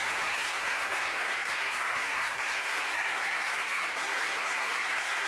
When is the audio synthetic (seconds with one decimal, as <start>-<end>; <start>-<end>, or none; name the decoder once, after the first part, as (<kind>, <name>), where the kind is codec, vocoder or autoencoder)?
0.0-5.3 (codec, SNAC)

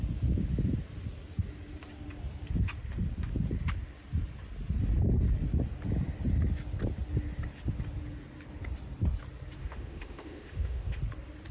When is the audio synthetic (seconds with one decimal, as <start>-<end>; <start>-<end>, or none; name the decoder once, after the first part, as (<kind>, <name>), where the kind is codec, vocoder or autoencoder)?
9.6-11.0 (autoencoder, DAC-VAE)

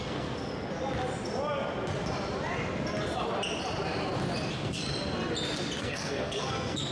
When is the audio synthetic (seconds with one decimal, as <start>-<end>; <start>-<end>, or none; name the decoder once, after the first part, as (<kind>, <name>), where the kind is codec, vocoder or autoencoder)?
0.0-0.5 (codec, SNAC); 4.5-4.9; 5.8-6.9

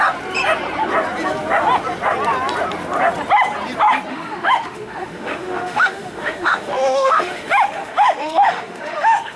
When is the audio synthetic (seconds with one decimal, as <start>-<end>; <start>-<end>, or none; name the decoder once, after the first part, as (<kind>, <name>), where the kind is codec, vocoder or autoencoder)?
4.1-9.4 (autoencoder, DAC-VAE)

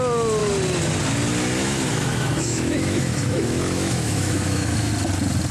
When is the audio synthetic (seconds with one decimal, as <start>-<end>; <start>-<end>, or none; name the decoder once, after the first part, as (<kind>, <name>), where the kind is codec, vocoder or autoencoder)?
1.6-4.9 (autoencoder, DAC-VAE)

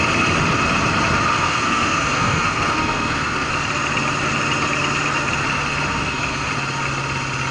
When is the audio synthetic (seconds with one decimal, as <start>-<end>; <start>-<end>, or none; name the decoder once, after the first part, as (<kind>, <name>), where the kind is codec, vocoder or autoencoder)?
1.3-3.5 (codec, SNAC); 5.9-6.5